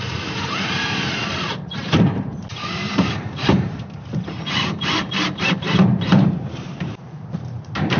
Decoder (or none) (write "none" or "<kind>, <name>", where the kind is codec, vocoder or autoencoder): vocoder, BigVGAN v2